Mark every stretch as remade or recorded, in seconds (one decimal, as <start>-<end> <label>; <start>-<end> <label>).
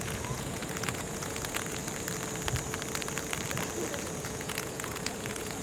0.0-1.8 remade; 1.8-4.0 recorded; 4.0-5.6 remade